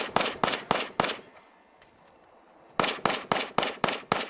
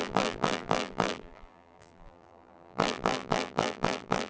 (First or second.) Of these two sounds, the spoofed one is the second